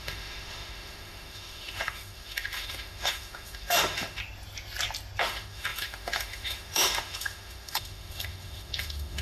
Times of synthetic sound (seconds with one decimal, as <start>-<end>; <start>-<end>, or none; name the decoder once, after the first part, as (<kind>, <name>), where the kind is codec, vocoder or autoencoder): 0.0-4.2 (autoencoder, DAC-VAE); 5.2-9.2